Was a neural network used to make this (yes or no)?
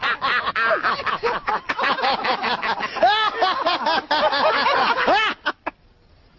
no